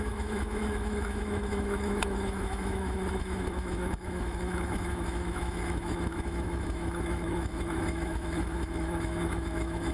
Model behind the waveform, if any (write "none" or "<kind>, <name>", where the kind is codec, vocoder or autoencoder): autoencoder, DAC-VAE